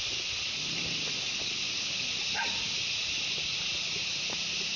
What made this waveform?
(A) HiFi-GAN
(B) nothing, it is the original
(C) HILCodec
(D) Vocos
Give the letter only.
B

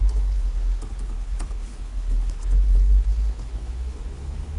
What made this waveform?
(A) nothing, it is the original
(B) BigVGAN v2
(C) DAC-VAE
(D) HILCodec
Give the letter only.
D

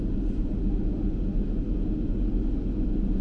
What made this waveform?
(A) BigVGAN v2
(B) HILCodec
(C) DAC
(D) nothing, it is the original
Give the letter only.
D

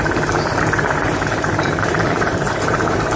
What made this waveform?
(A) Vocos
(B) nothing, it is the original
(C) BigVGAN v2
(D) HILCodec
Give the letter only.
C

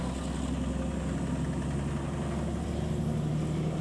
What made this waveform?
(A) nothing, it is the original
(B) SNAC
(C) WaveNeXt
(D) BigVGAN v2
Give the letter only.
A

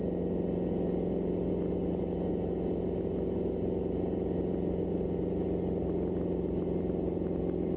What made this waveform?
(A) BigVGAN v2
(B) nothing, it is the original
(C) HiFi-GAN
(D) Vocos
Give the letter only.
B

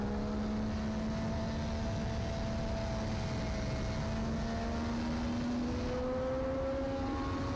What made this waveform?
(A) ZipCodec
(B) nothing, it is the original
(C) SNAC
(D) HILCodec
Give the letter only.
B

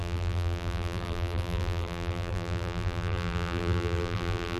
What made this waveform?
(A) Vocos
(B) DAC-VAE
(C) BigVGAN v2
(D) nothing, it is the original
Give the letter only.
C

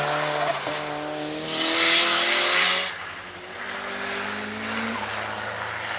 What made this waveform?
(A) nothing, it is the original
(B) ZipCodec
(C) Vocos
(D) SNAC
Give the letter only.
A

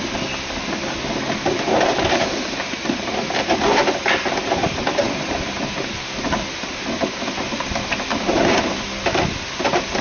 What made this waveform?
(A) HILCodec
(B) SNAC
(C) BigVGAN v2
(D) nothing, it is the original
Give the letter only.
D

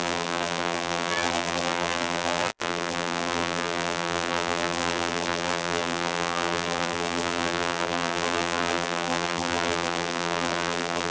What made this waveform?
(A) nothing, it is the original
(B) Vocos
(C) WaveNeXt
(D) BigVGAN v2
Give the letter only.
D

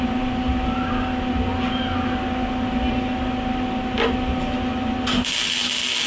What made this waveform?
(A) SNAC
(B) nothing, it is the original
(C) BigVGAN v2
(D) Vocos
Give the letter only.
B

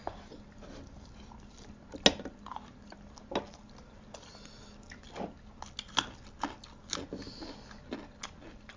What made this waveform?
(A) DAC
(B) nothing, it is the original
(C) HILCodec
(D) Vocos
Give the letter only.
B